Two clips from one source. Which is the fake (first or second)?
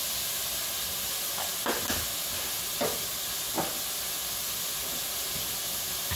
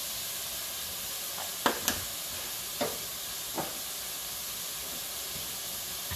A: second